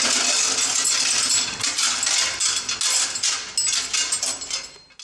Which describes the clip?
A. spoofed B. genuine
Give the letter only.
B